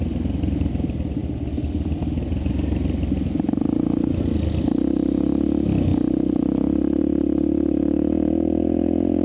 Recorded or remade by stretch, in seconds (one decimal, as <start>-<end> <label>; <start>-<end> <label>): 0.0-9.2 recorded